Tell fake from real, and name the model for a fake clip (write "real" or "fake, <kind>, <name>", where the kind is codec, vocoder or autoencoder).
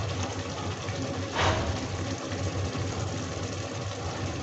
real